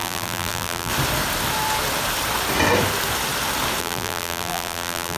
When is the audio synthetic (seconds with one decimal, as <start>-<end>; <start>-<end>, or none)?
0.0-0.9; 3.8-5.2